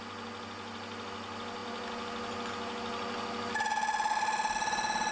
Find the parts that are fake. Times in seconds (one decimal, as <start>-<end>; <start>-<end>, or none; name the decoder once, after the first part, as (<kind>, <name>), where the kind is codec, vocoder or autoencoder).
none